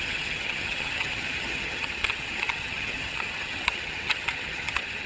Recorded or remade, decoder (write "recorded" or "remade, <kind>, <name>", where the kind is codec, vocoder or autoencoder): remade, vocoder, HiFi-GAN